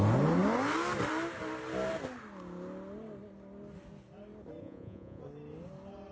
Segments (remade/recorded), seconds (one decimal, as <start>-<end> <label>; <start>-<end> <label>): 0.0-4.6 recorded; 4.6-5.2 remade; 5.2-6.1 recorded